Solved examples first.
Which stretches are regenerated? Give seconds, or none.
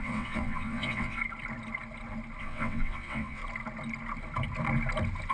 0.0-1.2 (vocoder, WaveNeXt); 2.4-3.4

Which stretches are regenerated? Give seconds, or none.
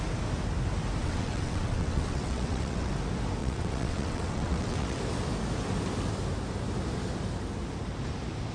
1.0-2.9 (vocoder, WaveNeXt); 3.4-5.0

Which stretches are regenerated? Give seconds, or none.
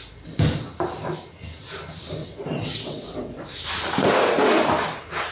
2.2-3.4 (vocoder, WaveNeXt)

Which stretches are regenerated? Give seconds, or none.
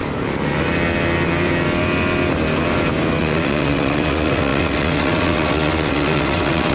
3.2-6.7 (vocoder, WaveNeXt)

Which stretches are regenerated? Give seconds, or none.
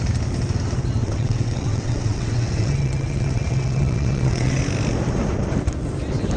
1.0-4.6 (vocoder, WaveNeXt)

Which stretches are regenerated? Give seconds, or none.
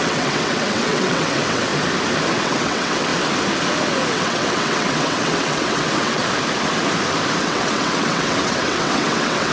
0.0-1.7 (vocoder, WaveNeXt); 2.3-3.1; 4.1-6.2; 7.4-9.5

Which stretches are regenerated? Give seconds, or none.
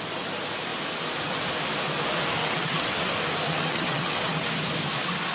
2.4-3.1 (vocoder, WaveNeXt); 3.5-4.5